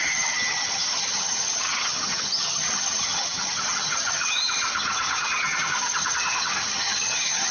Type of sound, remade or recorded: remade